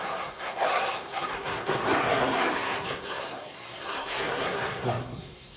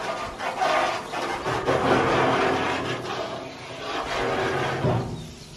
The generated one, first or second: first